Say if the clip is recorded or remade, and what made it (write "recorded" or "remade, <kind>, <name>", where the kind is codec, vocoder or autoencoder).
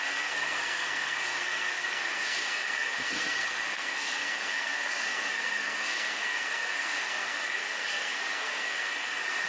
remade, codec, SNAC